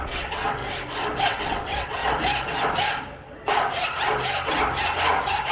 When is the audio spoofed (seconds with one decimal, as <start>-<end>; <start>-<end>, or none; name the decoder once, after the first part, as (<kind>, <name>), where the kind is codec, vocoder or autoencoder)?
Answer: 0.0-0.6 (vocoder, WaveNeXt); 1.2-2.0